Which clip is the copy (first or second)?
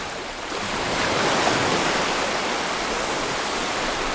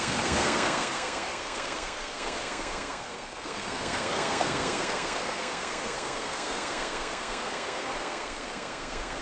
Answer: second